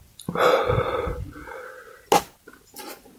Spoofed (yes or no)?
no